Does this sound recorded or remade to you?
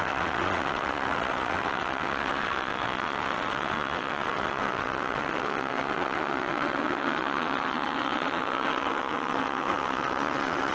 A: remade